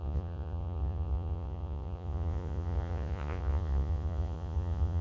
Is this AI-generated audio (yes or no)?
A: yes